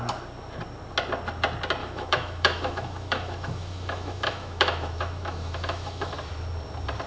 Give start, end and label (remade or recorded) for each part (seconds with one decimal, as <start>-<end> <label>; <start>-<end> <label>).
0.0-1.8 recorded; 1.8-6.1 remade; 6.1-7.1 recorded

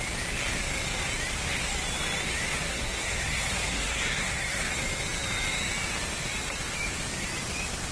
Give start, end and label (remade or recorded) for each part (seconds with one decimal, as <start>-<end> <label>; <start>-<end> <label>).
0.0-2.7 recorded; 2.7-4.6 remade; 4.6-7.9 recorded